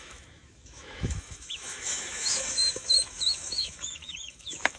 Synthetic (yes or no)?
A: yes